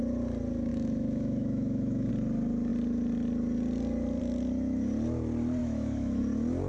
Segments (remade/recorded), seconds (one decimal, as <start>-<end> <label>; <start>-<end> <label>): 0.0-0.7 recorded; 0.7-2.1 remade; 2.1-5.6 recorded; 5.6-6.2 remade; 6.2-6.7 recorded